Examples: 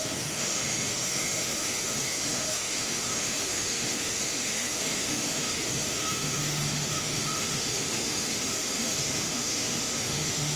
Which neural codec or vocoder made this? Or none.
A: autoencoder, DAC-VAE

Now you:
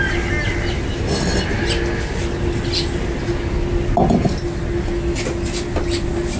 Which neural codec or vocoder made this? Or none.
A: none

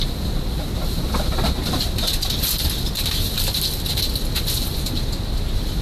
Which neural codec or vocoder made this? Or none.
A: none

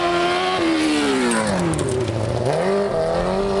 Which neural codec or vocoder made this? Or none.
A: none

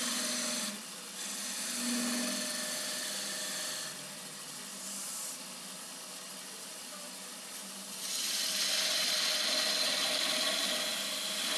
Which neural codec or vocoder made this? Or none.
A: none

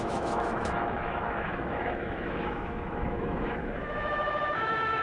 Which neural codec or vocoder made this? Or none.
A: autoencoder, DAC-VAE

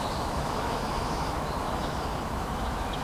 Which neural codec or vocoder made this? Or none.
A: autoencoder, DAC-VAE